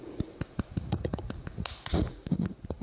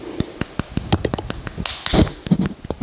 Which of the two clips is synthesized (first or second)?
first